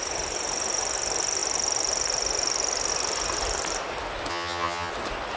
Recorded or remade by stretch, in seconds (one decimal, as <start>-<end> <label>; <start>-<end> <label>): 0.0-4.3 recorded; 4.3-4.9 remade; 4.9-5.4 recorded